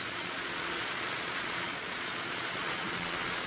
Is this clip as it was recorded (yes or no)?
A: no